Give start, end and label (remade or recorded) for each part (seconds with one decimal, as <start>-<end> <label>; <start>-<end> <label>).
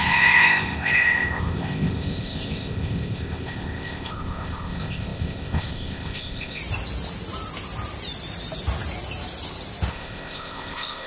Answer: 0.0-6.6 remade; 6.6-9.9 recorded; 9.9-11.1 remade